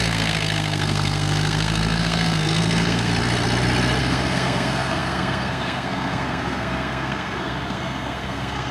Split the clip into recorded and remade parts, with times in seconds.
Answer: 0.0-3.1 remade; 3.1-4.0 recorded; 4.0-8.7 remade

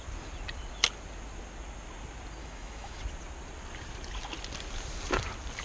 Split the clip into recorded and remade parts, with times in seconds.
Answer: 0.0-2.4 recorded; 2.4-3.0 remade; 3.0-5.6 recorded

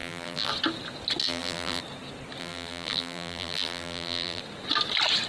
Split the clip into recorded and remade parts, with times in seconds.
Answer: 0.0-0.5 remade; 0.5-1.2 recorded; 1.2-1.8 remade; 1.8-2.4 recorded; 2.4-4.4 remade; 4.4-5.3 recorded

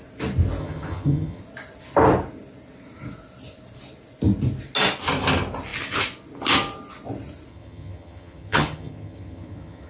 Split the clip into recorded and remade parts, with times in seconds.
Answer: 0.0-0.6 recorded; 0.6-1.4 remade; 1.4-7.5 recorded; 7.5-9.9 remade